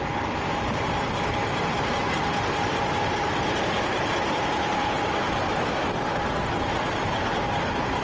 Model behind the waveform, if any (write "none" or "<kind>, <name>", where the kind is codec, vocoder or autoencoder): none